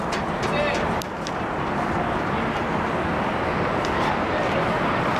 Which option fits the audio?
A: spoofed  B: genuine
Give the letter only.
B